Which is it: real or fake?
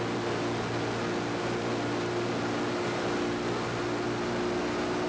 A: real